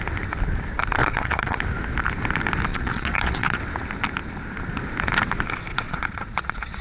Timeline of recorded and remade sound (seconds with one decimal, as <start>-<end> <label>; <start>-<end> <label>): 0.0-1.0 recorded; 1.0-1.6 remade; 1.6-2.7 recorded; 2.7-3.6 remade; 3.6-5.7 recorded; 5.7-6.8 remade